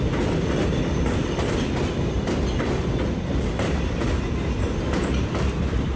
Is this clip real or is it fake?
real